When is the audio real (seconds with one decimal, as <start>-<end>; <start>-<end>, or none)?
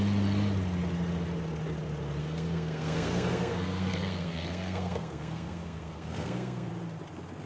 0.0-2.2; 6.7-7.5